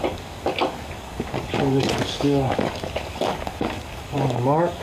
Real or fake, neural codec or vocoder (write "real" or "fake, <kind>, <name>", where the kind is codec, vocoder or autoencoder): fake, codec, DAC